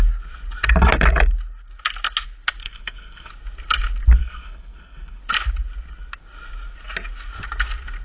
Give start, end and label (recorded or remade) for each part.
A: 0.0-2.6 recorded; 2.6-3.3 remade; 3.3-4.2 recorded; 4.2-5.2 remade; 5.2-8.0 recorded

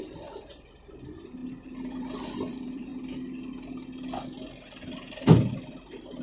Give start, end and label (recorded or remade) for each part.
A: 0.0-1.4 remade; 1.4-1.9 recorded; 1.9-2.9 remade; 2.9-5.5 recorded; 5.5-6.2 remade

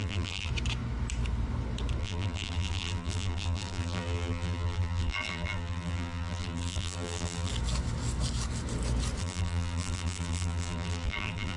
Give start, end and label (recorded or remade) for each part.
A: 0.0-0.5 remade; 0.5-2.0 recorded; 2.0-7.5 remade; 7.5-9.2 recorded; 9.2-11.6 remade

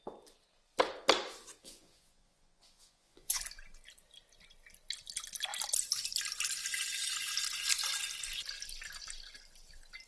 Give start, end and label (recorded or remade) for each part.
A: 0.0-1.6 recorded; 1.6-3.4 remade; 3.4-10.1 recorded

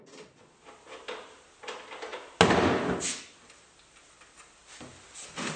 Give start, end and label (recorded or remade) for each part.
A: 0.0-5.6 recorded